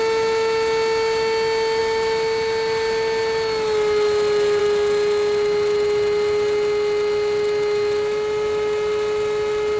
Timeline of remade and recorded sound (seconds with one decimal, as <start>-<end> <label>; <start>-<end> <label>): 0.0-9.8 recorded